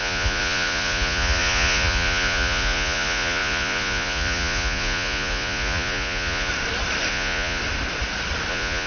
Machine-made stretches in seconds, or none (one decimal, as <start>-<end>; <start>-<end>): 0.0-6.5; 7.1-7.6; 8.5-8.9